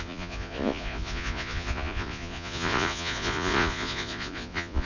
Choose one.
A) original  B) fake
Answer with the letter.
B